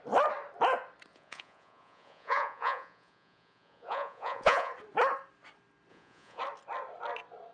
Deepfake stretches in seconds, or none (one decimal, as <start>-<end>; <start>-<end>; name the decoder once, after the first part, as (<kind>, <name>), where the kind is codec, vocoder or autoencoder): 1.1-4.7 (vocoder, Vocos); 5.9-6.4